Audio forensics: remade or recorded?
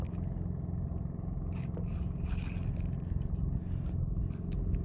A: recorded